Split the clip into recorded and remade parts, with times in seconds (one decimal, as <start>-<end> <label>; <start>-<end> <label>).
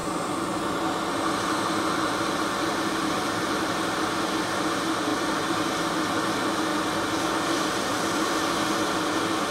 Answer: 0.0-0.6 remade; 0.6-5.1 recorded; 5.1-5.7 remade; 5.7-6.7 recorded; 6.7-9.1 remade; 9.1-9.5 recorded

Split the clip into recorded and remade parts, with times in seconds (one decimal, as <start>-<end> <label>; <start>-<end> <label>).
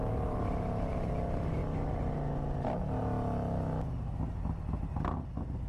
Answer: 0.0-5.7 recorded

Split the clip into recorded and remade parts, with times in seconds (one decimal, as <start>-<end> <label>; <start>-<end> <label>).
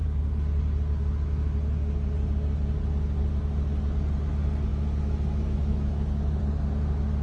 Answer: 0.0-4.7 recorded; 4.7-6.4 remade; 6.4-7.2 recorded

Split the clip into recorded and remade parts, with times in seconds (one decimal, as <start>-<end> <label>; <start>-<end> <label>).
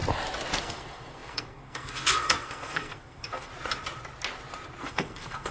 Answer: 0.0-0.6 recorded; 0.6-3.5 remade; 3.5-4.8 recorded; 4.8-5.5 remade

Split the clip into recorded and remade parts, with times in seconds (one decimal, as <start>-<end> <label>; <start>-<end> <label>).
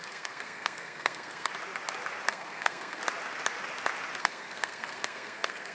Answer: 0.0-1.5 remade; 1.5-2.3 recorded; 2.3-3.0 remade; 3.0-4.2 recorded; 4.2-5.7 remade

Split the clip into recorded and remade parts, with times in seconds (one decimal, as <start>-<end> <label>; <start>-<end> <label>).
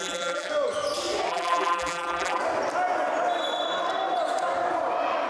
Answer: 0.0-0.5 remade; 0.5-1.3 recorded; 1.3-2.4 remade; 2.4-5.3 recorded